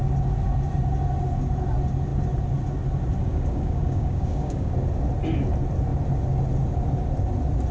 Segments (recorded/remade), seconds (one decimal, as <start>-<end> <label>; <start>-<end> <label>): 0.0-3.2 recorded; 3.2-4.7 remade; 4.7-7.7 recorded